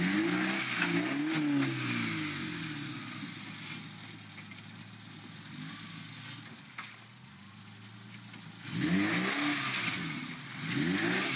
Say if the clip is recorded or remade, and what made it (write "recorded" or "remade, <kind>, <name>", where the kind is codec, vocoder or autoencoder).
recorded